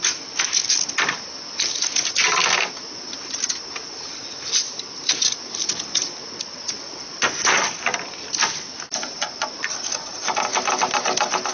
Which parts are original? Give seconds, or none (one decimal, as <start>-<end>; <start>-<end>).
0.0-6.0; 8.7-11.5